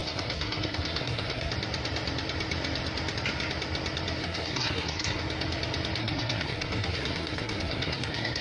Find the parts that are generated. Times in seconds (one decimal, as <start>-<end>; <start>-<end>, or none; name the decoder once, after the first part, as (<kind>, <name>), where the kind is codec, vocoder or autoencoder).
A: 0.0-1.5 (codec, SNAC); 4.2-5.2; 6.0-8.4